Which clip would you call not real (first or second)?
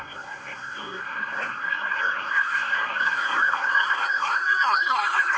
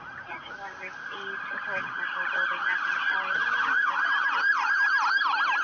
first